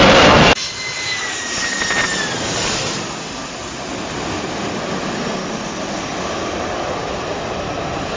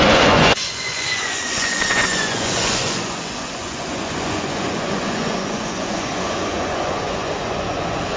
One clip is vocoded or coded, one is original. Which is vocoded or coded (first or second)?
second